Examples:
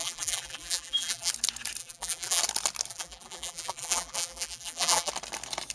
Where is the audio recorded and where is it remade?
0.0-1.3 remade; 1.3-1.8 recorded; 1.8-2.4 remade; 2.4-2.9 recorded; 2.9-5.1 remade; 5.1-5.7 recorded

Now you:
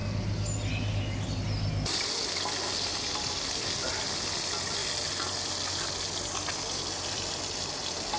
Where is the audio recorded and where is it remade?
0.0-8.2 recorded